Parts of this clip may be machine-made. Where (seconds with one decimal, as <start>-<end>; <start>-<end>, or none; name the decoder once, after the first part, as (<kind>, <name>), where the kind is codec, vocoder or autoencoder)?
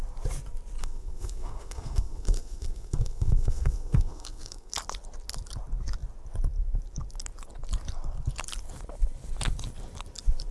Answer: 0.8-4.7 (codec, SNAC)